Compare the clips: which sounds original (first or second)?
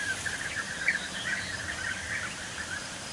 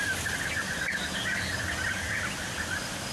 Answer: second